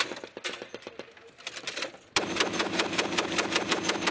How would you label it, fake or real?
real